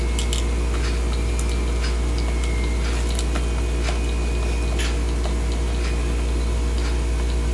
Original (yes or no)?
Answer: yes